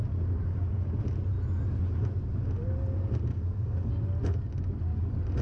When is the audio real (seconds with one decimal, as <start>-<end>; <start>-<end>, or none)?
0.0-3.3; 3.9-5.4